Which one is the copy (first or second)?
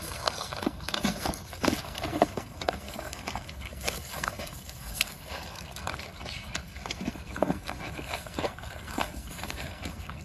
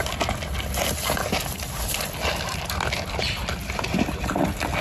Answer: first